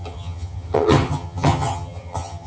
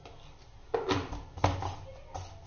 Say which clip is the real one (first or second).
second